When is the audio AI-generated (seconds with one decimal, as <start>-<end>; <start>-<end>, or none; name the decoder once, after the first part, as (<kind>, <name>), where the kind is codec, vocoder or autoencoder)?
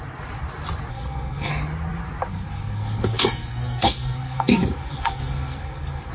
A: 0.9-1.5 (codec, SNAC); 2.3-6.1